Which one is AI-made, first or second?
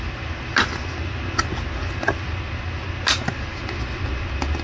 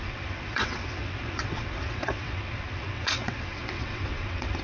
second